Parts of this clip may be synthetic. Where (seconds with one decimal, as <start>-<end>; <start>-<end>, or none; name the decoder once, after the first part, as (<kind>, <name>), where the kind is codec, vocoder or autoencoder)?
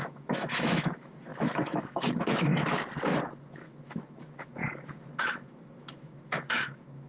0.0-2.5 (autoencoder, DAC-VAE); 3.4-4.6; 5.2-7.1